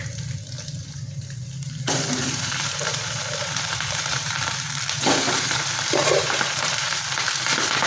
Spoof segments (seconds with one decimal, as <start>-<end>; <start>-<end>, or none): 0.8-3.0; 3.4-7.1